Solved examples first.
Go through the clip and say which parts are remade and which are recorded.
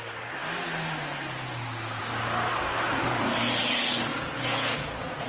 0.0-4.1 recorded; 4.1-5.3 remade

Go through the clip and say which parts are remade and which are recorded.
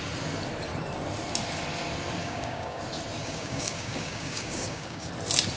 0.0-2.2 recorded; 2.2-2.8 remade; 2.8-3.2 recorded; 3.2-5.1 remade; 5.1-5.6 recorded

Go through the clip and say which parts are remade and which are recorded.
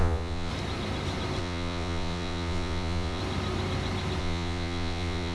0.0-0.5 remade; 0.5-1.4 recorded; 1.4-3.2 remade; 3.2-4.2 recorded; 4.2-5.3 remade